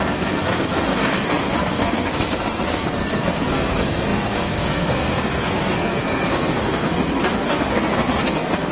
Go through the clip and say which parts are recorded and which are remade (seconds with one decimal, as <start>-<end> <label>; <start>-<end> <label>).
0.0-8.7 remade